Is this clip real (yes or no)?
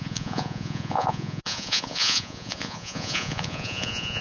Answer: no